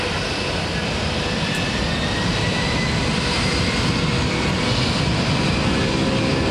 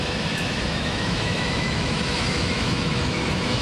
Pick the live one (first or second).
first